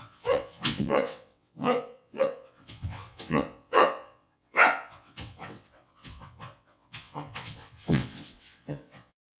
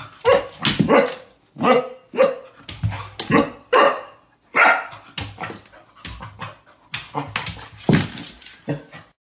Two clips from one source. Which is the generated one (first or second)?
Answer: first